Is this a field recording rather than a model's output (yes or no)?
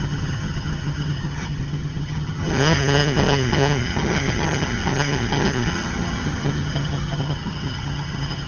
no